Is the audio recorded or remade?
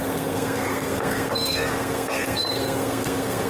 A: remade